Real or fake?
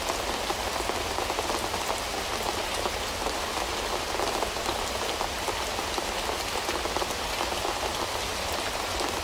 real